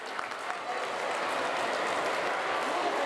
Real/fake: real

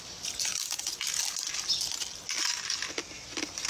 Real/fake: real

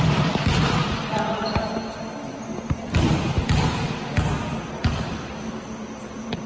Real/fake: real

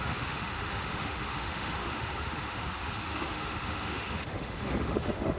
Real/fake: fake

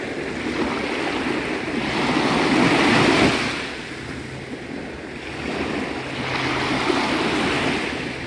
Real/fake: real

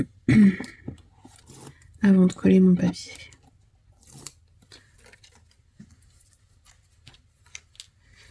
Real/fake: real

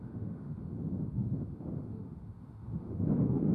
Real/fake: fake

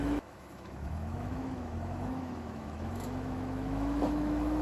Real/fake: fake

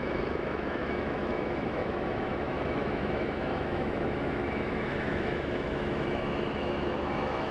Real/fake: fake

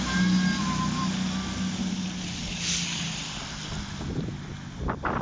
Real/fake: real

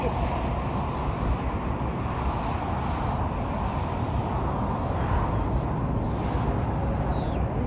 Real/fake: real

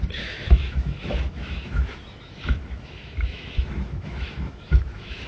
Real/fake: fake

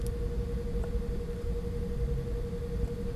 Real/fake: real